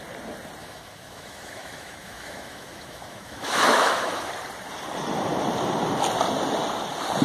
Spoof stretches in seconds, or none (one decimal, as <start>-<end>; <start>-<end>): 0.6-4.3